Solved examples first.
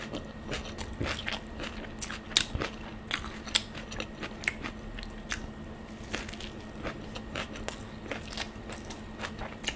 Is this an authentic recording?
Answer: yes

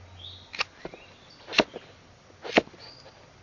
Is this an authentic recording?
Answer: yes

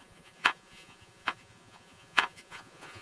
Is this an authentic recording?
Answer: no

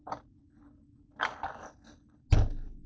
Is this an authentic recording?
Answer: yes